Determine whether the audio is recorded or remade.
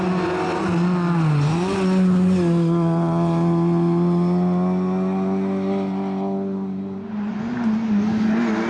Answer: recorded